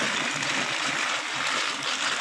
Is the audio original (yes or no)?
yes